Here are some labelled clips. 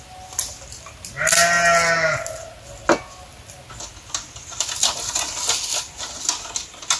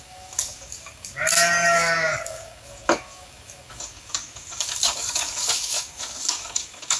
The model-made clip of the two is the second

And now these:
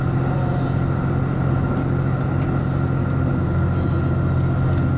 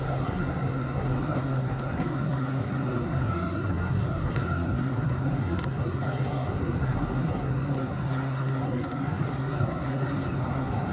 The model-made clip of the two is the second